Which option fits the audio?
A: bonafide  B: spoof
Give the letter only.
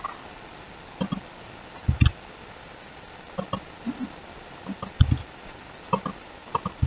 A